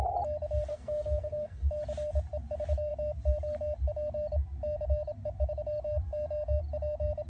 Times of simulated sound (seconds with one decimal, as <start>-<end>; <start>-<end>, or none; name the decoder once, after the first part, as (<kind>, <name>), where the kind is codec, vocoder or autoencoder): 0.7-1.7 (codec, SNAC)